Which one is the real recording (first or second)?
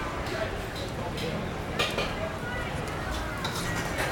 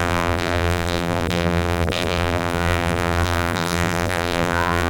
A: first